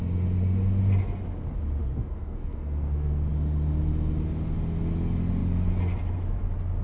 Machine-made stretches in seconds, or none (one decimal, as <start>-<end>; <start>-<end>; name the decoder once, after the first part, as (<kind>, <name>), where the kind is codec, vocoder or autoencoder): 1.8-3.3 (codec, SNAC)